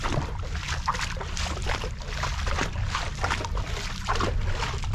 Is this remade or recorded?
recorded